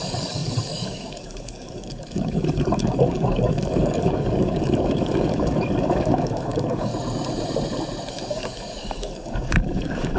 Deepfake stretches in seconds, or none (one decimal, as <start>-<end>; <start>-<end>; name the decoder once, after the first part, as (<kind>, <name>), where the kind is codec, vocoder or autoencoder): 0.0-6.9 (codec, DAC); 8.1-10.2